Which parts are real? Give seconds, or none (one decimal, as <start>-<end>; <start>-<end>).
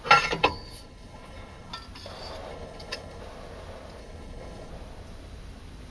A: 0.0-0.4; 1.7-2.5; 3.2-4.0; 4.7-5.9